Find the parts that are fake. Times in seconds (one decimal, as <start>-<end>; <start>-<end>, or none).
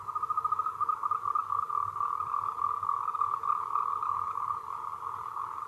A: 1.4-3.0